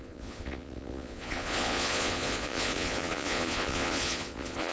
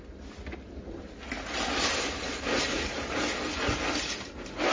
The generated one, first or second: first